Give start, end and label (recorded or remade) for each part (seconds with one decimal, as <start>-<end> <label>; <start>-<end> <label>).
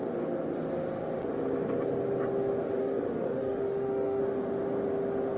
0.0-2.8 recorded; 2.8-4.2 remade; 4.2-5.4 recorded